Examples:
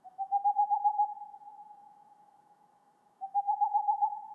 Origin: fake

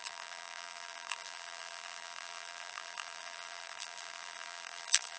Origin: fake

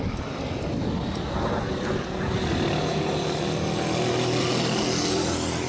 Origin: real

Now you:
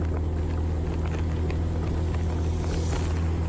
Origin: real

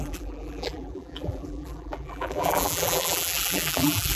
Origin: fake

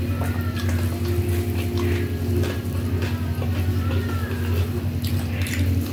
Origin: real